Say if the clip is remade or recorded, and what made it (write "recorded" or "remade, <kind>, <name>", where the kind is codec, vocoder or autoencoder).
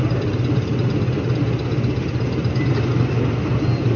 recorded